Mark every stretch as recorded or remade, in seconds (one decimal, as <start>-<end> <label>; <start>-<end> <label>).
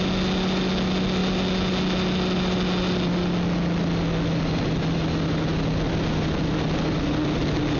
0.0-7.8 recorded